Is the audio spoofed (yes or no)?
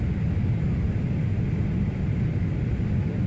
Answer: no